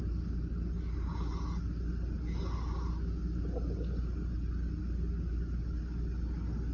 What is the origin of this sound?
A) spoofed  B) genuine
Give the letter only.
B